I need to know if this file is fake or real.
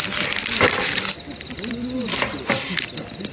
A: real